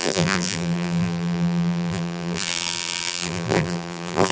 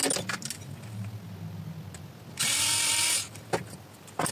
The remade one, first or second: first